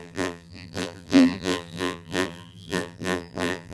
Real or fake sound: fake